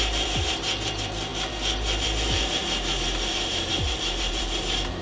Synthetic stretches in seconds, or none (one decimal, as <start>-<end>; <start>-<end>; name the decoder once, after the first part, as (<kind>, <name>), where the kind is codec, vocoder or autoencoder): 0.0-5.0 (vocoder, BigVGAN v2)